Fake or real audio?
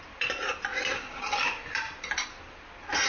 real